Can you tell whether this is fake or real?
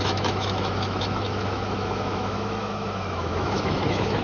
fake